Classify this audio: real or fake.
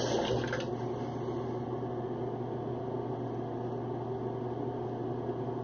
real